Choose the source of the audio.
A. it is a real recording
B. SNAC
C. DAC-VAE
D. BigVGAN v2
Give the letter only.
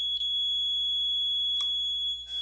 A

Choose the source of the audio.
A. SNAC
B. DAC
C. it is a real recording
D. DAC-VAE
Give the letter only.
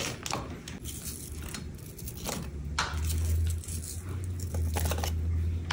C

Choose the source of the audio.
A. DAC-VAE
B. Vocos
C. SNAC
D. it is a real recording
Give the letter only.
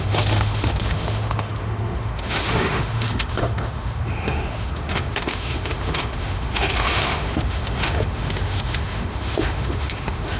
A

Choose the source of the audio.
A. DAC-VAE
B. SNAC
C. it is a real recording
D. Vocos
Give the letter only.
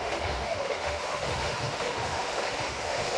A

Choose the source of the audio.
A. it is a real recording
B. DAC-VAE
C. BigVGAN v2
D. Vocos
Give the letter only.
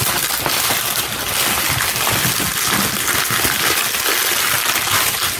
A